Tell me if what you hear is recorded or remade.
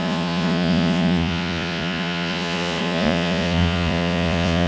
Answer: remade